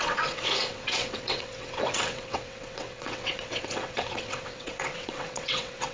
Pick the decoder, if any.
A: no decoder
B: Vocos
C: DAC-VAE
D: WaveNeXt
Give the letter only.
D